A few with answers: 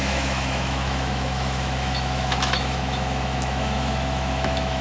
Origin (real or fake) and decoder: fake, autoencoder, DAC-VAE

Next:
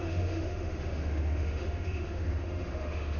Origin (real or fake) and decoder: fake, autoencoder, DAC-VAE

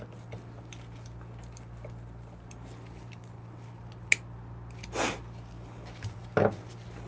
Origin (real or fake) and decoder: real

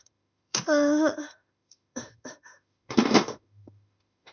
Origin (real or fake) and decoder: fake, autoencoder, DAC-VAE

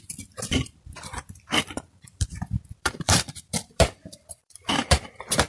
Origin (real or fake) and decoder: fake, vocoder, BigVGAN v2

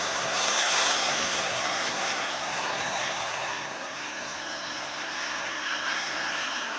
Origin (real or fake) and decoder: fake, codec, SNAC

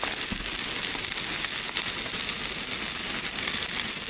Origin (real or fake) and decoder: real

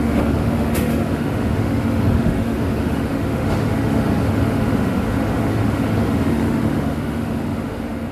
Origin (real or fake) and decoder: fake, autoencoder, DAC-VAE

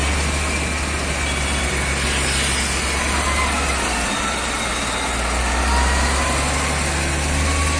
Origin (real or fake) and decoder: real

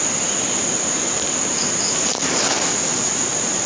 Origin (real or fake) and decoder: real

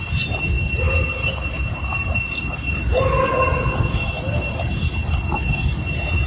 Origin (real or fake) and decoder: real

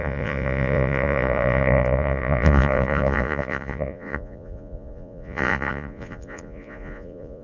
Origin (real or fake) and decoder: fake, vocoder, Vocos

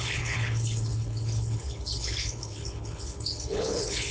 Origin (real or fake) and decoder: fake, codec, HILCodec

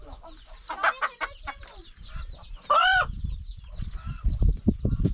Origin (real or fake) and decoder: real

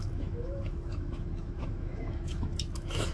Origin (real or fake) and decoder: fake, autoencoder, DAC-VAE